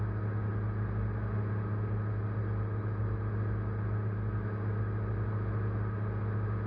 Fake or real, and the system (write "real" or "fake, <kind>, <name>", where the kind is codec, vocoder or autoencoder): real